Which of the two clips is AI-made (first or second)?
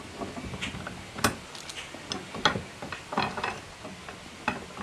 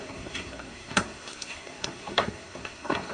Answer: second